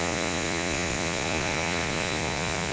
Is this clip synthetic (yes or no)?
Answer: yes